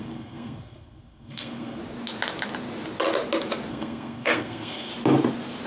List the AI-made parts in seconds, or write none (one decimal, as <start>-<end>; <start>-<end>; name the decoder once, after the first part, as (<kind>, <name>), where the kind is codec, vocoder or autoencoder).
0.0-1.8 (codec, SNAC); 3.7-4.9